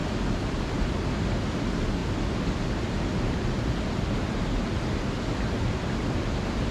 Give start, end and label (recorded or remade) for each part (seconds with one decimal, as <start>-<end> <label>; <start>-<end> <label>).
0.0-1.1 remade; 1.1-6.7 recorded

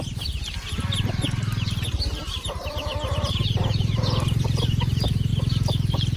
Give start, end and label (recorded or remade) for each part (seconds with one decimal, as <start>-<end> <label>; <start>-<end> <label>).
0.0-1.9 recorded; 1.9-4.4 remade; 4.4-5.3 recorded; 5.3-6.2 remade